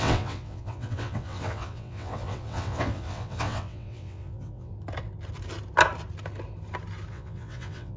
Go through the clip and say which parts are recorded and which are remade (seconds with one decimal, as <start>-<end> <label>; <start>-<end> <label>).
0.0-4.7 remade; 4.7-7.1 recorded; 7.1-8.0 remade